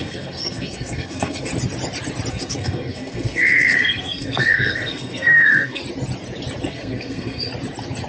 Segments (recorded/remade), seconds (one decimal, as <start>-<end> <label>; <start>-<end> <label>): 0.0-1.5 remade; 1.5-2.3 recorded; 2.3-5.8 remade; 5.8-6.7 recorded; 6.7-7.5 remade; 7.5-8.1 recorded